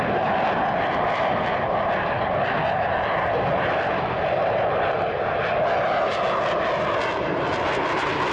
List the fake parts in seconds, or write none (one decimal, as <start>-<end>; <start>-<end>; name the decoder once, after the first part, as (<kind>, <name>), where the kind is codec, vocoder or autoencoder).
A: none